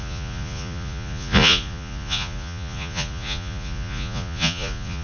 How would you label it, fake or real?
fake